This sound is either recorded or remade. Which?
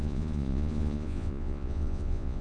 remade